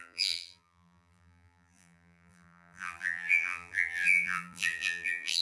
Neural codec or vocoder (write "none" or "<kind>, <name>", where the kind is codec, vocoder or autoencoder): vocoder, BigVGAN v2